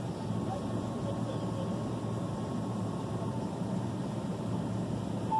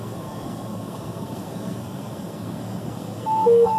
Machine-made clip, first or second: second